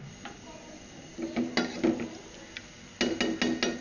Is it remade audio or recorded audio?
recorded